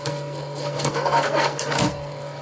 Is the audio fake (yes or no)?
yes